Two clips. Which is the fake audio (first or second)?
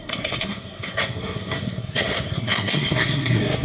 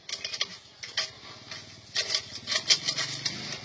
first